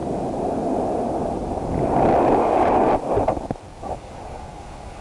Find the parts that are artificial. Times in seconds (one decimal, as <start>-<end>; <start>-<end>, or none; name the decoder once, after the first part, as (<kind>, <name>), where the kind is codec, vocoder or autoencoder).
2.4-2.9 (codec, DAC); 3.7-5.0